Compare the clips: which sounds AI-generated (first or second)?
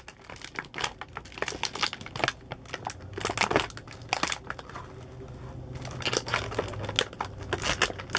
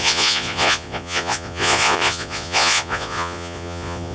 second